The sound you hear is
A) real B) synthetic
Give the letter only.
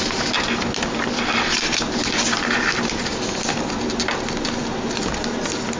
A